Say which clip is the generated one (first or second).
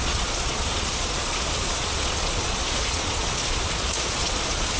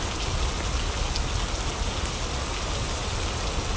first